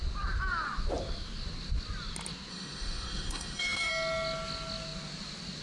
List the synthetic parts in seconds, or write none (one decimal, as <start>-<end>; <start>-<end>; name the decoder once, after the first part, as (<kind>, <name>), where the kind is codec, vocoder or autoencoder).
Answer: 2.5-3.9 (autoencoder, DAC-VAE)